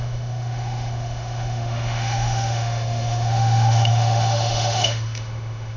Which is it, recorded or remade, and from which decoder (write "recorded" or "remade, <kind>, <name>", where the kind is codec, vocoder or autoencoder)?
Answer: remade, autoencoder, DAC-VAE